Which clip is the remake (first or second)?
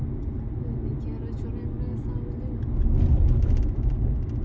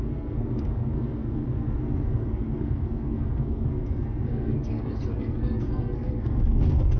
second